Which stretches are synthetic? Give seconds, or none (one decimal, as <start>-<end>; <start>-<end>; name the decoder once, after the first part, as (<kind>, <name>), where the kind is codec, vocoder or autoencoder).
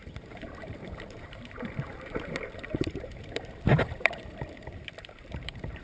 0.0-3.1 (vocoder, BigVGAN v2); 3.7-4.2; 5.0-5.8